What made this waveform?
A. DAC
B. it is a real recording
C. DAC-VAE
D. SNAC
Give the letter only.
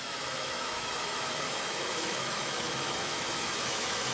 C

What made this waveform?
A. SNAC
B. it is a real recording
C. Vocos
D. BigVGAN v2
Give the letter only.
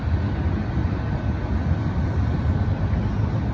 B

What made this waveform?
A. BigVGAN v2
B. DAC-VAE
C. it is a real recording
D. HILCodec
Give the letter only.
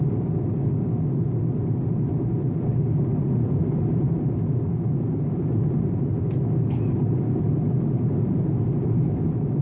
A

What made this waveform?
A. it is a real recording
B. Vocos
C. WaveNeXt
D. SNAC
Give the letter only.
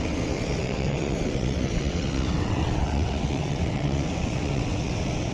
C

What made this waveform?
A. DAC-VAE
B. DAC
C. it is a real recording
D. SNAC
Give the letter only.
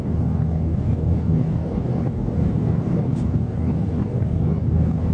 B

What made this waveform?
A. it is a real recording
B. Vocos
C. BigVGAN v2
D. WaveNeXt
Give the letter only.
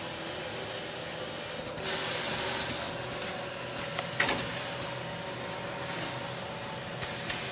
A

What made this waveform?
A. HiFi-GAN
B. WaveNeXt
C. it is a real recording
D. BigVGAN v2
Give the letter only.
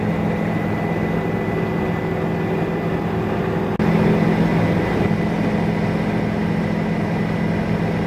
C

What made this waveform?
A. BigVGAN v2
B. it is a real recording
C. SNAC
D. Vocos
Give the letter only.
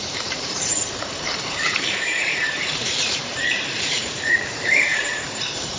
A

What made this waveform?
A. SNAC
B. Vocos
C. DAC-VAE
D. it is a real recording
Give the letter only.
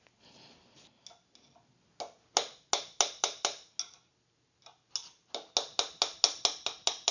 D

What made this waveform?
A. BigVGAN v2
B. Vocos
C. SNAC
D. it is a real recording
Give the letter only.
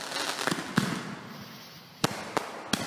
D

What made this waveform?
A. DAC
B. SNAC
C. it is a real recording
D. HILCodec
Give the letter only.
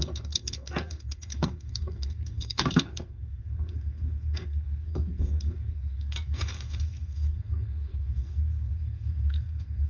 B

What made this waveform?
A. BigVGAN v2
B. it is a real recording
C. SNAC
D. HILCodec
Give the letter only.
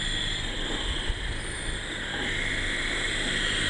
B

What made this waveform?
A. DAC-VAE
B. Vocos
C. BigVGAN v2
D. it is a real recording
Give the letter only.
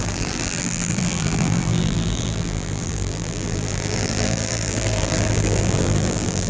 C